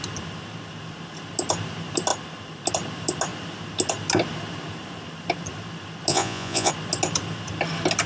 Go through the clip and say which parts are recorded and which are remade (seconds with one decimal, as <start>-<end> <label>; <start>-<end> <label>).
0.0-6.1 recorded; 6.1-6.7 remade; 6.7-8.1 recorded